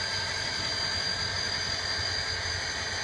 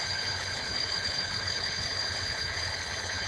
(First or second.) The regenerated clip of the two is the second